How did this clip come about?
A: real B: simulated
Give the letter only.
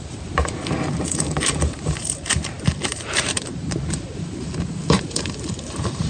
B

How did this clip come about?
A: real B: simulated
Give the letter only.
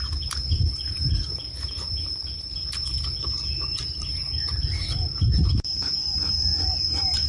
B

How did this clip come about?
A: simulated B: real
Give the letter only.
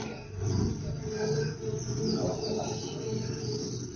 B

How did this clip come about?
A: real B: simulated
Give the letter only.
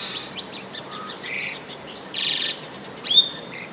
B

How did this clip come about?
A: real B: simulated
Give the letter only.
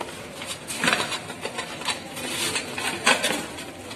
A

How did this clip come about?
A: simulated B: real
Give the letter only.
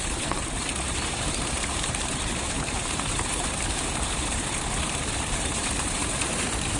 A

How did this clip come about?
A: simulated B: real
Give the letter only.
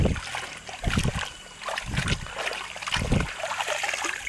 B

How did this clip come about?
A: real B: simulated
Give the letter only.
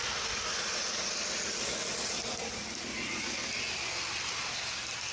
A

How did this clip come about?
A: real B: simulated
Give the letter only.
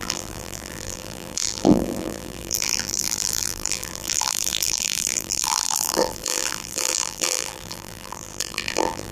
B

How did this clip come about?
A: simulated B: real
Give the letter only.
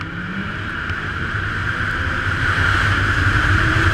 A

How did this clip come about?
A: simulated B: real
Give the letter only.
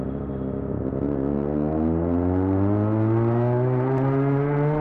B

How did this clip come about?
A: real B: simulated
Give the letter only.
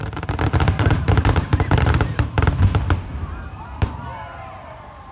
B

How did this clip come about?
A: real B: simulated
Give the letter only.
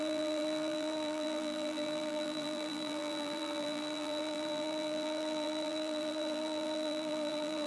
B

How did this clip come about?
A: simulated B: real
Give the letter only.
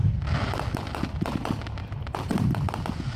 B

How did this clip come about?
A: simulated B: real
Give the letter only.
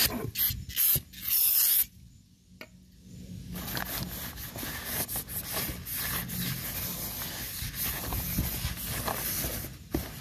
B